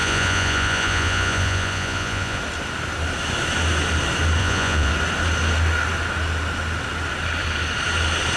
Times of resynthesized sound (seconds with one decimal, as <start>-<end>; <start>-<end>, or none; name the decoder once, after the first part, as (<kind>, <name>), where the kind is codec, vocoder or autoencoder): 0.0-2.4 (vocoder, Vocos); 4.4-4.9